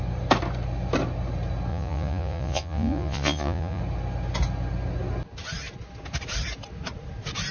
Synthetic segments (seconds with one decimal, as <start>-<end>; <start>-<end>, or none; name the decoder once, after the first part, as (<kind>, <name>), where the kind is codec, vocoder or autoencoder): 1.7-3.8 (vocoder, Vocos)